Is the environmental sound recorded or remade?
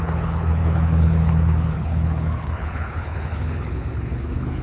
remade